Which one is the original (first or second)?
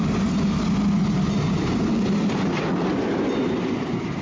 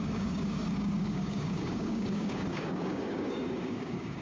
first